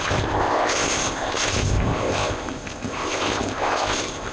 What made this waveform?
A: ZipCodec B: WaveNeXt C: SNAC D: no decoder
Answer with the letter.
A